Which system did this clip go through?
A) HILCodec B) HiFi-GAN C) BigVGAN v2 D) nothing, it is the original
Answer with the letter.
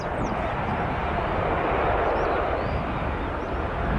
D